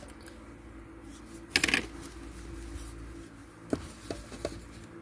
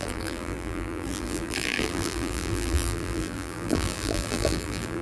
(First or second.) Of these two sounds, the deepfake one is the second